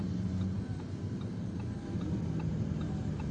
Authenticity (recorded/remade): recorded